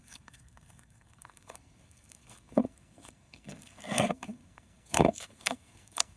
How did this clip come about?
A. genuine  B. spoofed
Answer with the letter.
B